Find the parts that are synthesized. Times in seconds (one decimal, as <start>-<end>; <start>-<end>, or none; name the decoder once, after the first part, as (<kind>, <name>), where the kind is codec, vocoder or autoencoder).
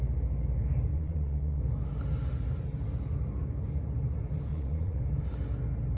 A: 0.9-1.6 (vocoder, Vocos); 4.5-5.0